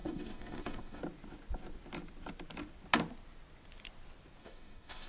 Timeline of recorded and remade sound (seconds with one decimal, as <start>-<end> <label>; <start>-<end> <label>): 0.0-1.0 remade; 1.0-4.4 recorded; 4.4-5.1 remade